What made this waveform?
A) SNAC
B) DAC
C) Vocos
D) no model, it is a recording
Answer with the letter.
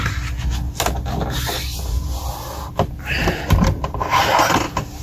D